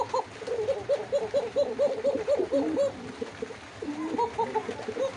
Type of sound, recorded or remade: recorded